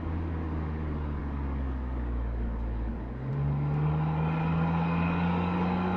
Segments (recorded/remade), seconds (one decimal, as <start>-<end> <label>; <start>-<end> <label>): 0.0-6.0 remade